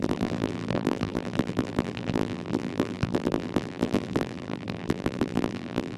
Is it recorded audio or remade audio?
remade